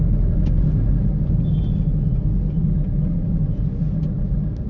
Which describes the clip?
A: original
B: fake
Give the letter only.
A